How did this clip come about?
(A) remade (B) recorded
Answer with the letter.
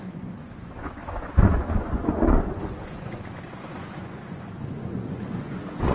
A